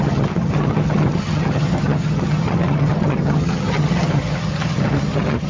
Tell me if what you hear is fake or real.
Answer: fake